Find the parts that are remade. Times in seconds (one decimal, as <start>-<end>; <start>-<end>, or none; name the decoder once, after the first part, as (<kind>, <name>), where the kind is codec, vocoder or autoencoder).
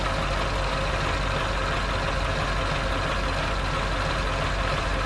none